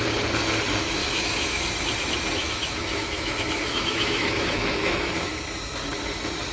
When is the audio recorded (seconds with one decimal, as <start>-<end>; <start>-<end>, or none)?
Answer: 0.0-1.0; 1.6-2.4; 5.1-6.5